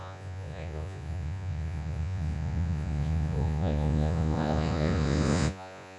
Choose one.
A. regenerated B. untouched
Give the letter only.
A